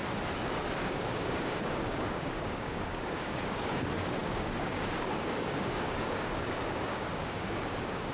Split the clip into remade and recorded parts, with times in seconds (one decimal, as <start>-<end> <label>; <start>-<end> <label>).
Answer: 0.0-0.6 recorded; 0.6-8.1 remade